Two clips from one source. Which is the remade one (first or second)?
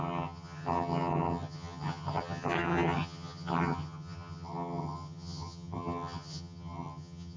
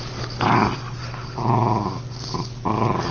first